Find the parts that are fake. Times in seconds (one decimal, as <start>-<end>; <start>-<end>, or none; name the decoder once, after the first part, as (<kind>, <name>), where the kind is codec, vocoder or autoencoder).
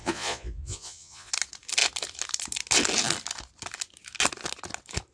0.0-1.3 (vocoder, Vocos)